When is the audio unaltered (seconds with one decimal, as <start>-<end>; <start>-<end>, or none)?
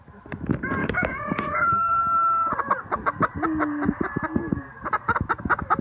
0.0-0.8; 2.0-5.8